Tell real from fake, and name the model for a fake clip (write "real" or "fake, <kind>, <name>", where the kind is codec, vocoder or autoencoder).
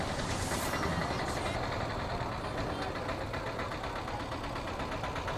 real